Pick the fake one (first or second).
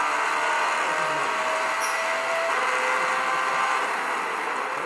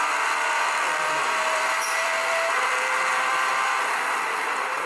second